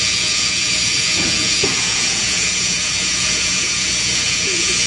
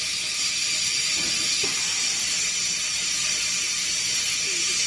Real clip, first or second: second